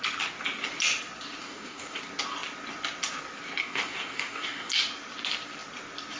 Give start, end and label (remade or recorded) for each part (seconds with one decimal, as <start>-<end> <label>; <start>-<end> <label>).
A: 0.0-1.4 recorded; 1.4-2.0 remade; 2.0-3.6 recorded; 3.6-4.7 remade; 4.7-6.2 recorded